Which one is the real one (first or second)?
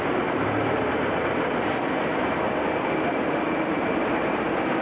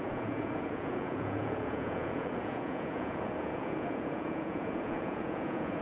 first